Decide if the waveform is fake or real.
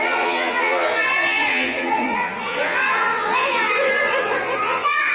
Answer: fake